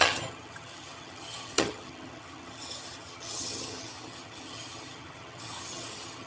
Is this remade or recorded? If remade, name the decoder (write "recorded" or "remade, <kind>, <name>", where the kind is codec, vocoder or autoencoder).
remade, vocoder, HiFi-GAN